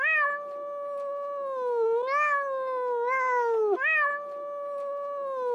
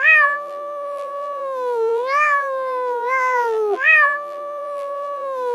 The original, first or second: first